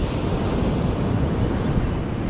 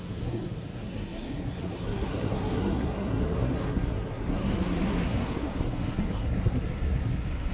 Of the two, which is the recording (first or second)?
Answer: first